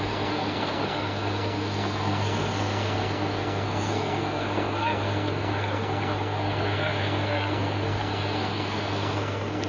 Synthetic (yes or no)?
yes